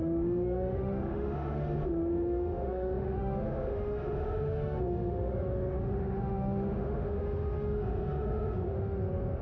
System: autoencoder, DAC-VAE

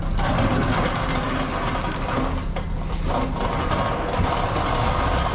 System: none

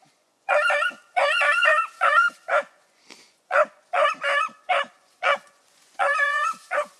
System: vocoder, Vocos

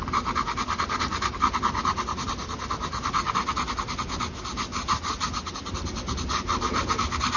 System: none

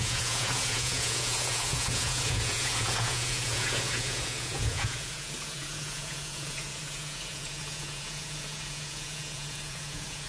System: vocoder, Vocos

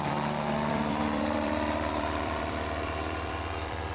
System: vocoder, BigVGAN v2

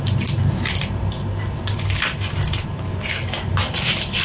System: vocoder, BigVGAN v2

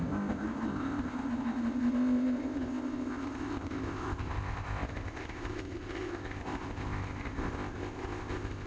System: codec, ZipCodec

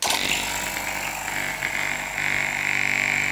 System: none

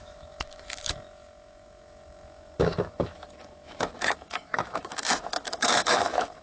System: autoencoder, DAC-VAE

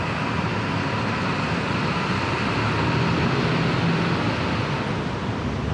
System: none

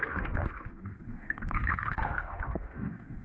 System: autoencoder, DAC-VAE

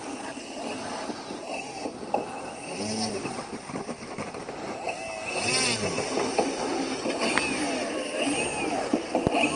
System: none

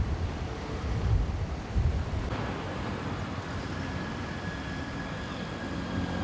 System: vocoder, BigVGAN v2